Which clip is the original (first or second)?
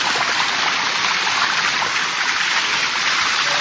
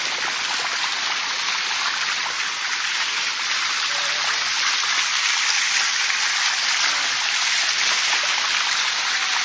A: second